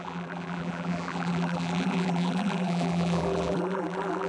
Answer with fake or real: fake